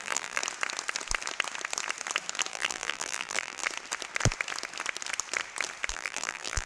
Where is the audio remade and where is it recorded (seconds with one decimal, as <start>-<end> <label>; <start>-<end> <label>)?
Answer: 0.0-0.4 remade; 0.4-2.5 recorded; 2.5-3.6 remade; 3.6-5.9 recorded; 5.9-6.7 remade